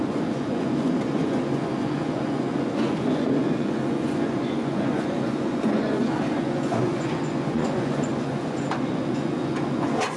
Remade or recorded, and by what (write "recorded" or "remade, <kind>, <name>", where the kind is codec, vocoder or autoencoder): remade, vocoder, Vocos